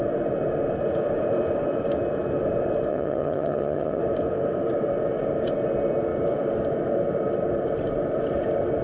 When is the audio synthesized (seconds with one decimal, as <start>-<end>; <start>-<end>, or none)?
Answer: 2.9-4.0